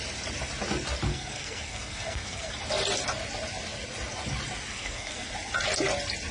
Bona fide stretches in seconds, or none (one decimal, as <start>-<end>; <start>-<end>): 0.0-1.1; 2.5-4.7; 5.3-6.3